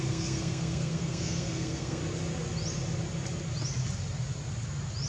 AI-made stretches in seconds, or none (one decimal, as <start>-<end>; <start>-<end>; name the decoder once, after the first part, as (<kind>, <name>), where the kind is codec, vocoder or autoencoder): 0.0-2.0 (codec, SNAC)